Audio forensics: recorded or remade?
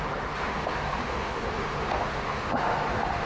remade